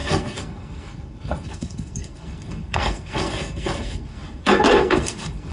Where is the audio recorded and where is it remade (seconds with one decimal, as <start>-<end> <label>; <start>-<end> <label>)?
0.0-5.5 remade